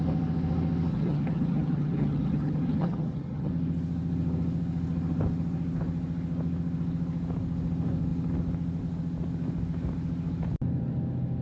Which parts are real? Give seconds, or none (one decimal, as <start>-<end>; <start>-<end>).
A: 0.0-0.9; 3.5-11.4